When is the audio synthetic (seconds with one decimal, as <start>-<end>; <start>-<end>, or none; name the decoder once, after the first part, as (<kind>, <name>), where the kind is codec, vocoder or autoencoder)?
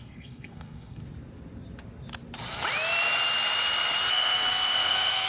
0.0-1.0 (codec, SNAC); 4.1-5.3